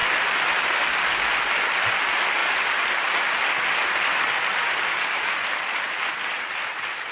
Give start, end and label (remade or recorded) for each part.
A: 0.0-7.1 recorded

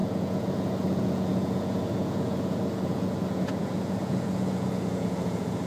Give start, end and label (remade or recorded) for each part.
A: 0.0-5.7 remade

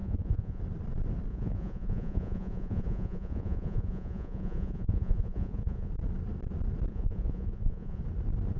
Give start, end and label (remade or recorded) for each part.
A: 0.0-0.6 remade; 0.6-1.3 recorded; 1.3-5.9 remade; 5.9-6.9 recorded; 6.9-8.0 remade; 8.0-8.6 recorded